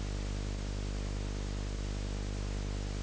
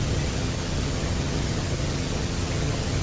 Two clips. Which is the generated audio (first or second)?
second